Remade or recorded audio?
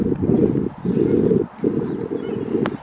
recorded